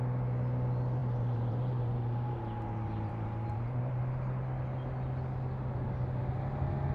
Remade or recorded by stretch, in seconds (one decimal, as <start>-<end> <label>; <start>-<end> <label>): 0.0-1.0 recorded; 1.0-4.0 remade; 4.0-6.9 recorded